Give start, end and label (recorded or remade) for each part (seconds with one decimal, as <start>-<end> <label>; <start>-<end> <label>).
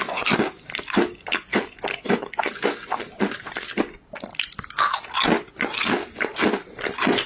0.0-7.3 recorded